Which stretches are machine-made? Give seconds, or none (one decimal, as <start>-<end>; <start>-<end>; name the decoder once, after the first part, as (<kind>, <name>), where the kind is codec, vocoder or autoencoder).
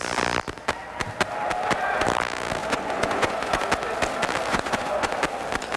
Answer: 2.6-3.7 (vocoder, Vocos); 4.5-5.1